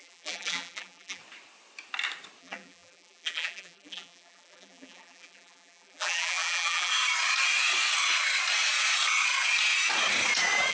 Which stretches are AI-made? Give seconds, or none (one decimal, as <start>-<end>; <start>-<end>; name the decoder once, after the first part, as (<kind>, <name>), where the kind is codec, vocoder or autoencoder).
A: 0.0-1.2 (vocoder, BigVGAN v2); 2.4-6.9